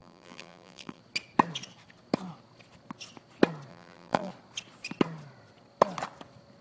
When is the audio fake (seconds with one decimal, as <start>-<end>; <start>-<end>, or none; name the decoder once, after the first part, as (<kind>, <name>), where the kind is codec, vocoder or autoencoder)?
0.0-1.0 (vocoder, BigVGAN v2); 3.7-4.3